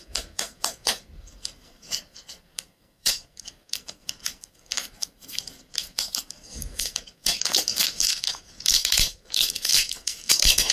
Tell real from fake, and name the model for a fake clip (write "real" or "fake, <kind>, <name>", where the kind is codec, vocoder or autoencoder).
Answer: fake, codec, SNAC